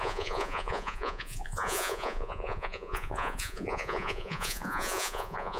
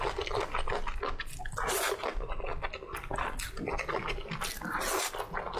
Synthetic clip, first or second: first